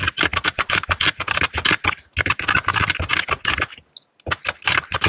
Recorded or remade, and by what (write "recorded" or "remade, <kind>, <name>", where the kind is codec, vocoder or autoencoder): recorded